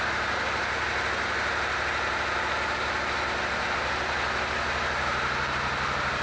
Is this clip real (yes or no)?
yes